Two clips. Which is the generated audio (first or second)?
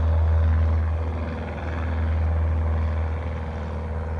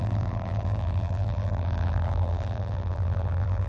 second